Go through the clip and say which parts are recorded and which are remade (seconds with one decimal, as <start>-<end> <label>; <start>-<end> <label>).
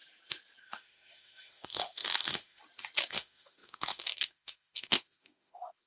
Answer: 0.0-0.6 recorded; 0.6-2.6 remade; 2.6-3.1 recorded; 3.1-5.9 remade